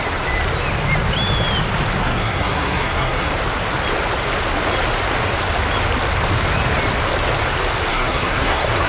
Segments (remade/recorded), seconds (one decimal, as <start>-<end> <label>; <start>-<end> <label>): 0.0-2.0 recorded; 2.0-3.3 remade; 3.3-7.9 recorded; 7.9-8.9 remade